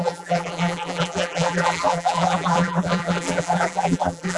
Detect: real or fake fake